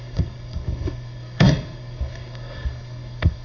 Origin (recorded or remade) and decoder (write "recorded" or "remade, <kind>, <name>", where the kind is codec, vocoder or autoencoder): remade, codec, SNAC